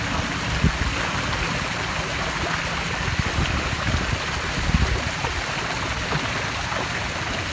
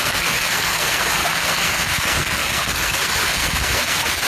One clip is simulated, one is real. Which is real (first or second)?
first